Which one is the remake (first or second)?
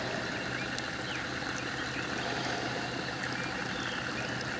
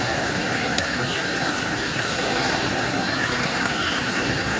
second